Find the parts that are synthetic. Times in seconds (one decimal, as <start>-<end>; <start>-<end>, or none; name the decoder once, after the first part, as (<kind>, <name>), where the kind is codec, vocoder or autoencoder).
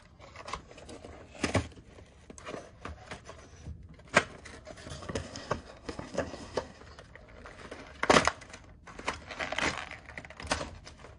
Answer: 5.0-6.8 (codec, SNAC)